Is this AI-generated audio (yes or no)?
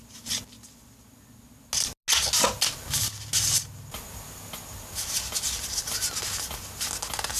no